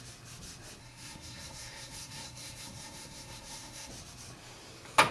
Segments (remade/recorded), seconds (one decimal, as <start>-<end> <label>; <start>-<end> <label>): 0.0-0.8 recorded; 0.8-3.9 remade; 3.9-5.1 recorded